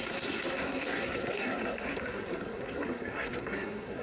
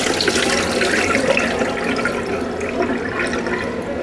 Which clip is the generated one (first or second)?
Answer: first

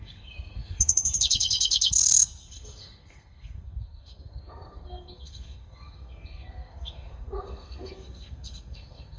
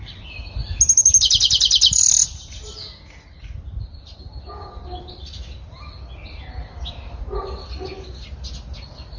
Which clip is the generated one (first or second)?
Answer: first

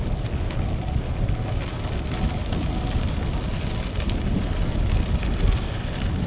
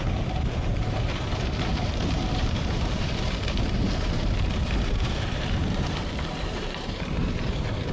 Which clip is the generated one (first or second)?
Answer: second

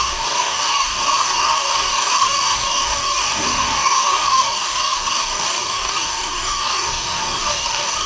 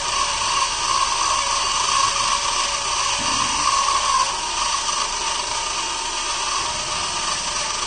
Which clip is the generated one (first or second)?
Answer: first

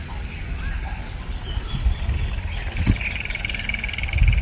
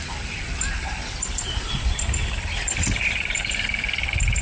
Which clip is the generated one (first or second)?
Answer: second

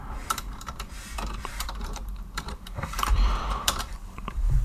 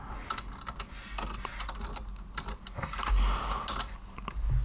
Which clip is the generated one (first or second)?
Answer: first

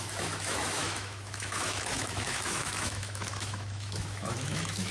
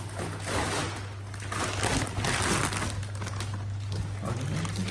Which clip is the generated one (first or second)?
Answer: first